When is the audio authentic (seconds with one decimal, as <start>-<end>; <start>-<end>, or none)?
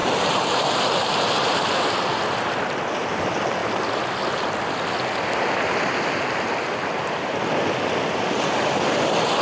1.1-9.4